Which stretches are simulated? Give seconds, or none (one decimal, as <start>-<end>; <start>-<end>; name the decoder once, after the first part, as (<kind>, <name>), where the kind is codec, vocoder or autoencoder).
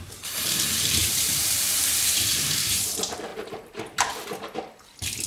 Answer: 0.0-3.3 (vocoder, BigVGAN v2)